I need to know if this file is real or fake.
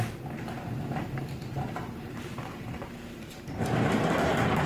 fake